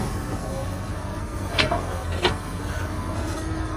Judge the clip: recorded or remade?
remade